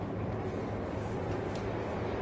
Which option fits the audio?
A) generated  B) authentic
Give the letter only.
B